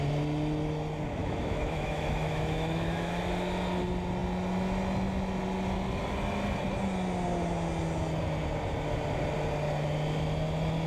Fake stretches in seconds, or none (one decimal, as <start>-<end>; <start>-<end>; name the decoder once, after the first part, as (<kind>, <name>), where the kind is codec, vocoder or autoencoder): 1.2-3.2 (autoencoder, DAC-VAE)